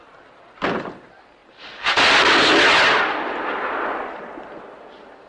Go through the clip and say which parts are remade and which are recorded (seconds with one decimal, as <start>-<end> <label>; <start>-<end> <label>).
0.0-5.3 recorded